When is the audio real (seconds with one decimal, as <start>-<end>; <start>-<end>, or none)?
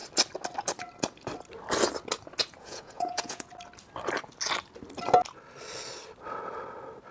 0.0-2.4; 3.5-7.1